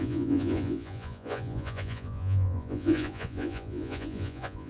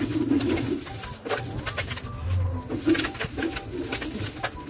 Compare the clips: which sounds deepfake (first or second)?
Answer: first